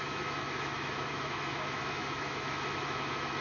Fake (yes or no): yes